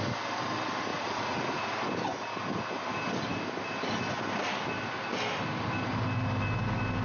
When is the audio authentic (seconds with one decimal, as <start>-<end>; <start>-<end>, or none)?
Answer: 0.0-0.9; 1.6-7.0